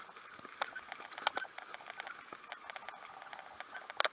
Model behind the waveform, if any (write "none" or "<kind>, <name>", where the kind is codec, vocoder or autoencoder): none